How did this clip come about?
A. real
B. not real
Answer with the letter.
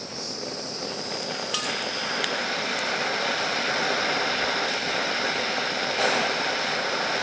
A